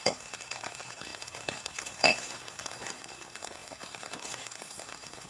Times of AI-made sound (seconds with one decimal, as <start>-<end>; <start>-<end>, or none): 0.0-5.3